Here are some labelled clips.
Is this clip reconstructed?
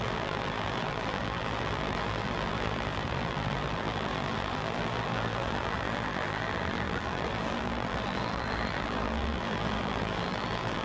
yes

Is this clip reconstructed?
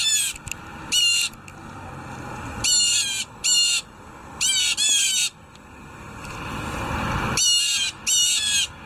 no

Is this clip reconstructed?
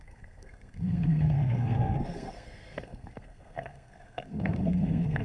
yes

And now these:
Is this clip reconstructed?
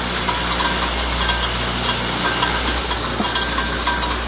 no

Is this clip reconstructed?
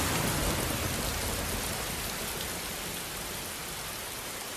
no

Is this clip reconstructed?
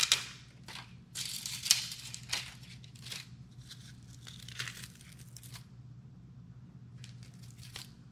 no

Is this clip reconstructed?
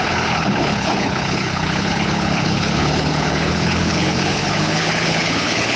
yes